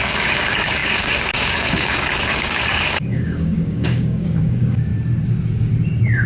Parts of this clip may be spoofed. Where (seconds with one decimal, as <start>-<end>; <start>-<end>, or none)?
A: 0.0-4.9